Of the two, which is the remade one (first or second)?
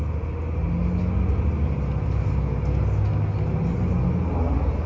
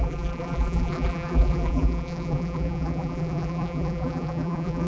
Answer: second